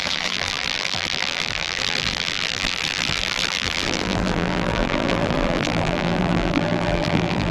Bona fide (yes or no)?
no